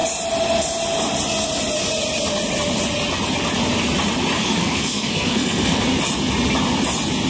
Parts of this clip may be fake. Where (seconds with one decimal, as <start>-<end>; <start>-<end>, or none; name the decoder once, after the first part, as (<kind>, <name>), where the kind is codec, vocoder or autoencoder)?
4.4-5.8 (codec, SNAC)